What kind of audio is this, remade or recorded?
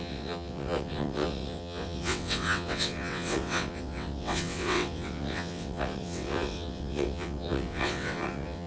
remade